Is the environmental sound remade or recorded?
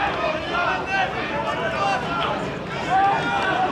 recorded